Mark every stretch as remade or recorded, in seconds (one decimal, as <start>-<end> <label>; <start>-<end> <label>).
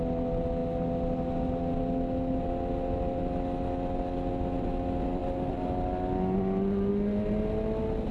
0.0-8.1 recorded